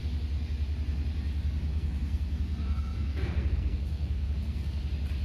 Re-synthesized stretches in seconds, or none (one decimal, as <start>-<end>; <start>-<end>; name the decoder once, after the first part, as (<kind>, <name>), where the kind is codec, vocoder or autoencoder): 1.7-4.8 (codec, SNAC)

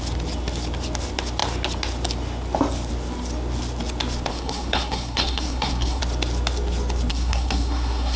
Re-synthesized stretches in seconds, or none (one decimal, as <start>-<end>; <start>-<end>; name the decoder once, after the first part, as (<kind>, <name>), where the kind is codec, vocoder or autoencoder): 4.3-6.0 (codec, SNAC); 7.1-8.2

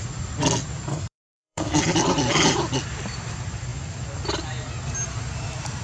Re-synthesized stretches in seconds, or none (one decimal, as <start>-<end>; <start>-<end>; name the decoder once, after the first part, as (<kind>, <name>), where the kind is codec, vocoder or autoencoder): 0.9-1.8 (codec, SNAC)

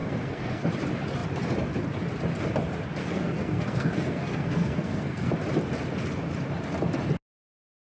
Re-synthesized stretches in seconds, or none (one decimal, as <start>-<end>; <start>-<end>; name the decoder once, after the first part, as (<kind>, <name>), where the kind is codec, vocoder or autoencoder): 0.0-0.7 (codec, SNAC); 3.0-5.3

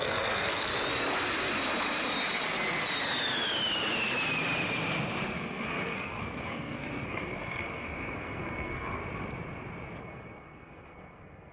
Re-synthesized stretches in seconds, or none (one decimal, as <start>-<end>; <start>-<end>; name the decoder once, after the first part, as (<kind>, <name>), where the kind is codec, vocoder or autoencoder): 0.0-0.7 (codec, SNAC); 5.3-9.0; 10.0-11.5

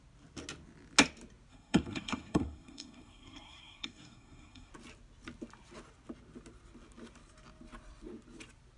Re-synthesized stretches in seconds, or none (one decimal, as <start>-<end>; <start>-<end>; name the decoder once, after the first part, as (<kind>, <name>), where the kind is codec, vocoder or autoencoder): 1.5-4.7 (codec, SNAC)